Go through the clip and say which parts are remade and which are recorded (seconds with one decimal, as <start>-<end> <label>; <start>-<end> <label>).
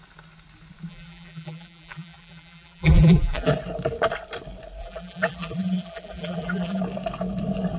0.0-0.9 recorded; 0.9-3.5 remade; 3.5-4.8 recorded; 4.8-6.8 remade; 6.8-7.8 recorded